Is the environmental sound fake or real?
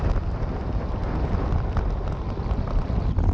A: real